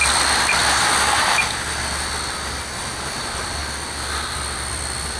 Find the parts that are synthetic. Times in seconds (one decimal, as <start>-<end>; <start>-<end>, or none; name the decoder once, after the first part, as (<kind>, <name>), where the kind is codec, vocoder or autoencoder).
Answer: 0.0-0.6 (vocoder, BigVGAN v2); 2.8-5.2